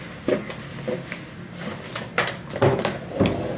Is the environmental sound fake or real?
real